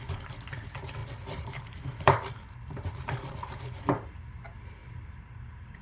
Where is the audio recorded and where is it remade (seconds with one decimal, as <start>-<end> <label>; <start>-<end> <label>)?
0.0-1.0 recorded; 1.0-4.3 remade; 4.3-4.8 recorded; 4.8-5.8 remade